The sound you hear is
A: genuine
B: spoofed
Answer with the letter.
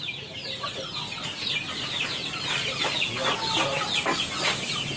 A